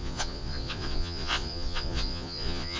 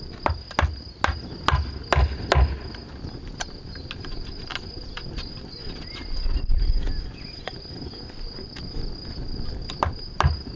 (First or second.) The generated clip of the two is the first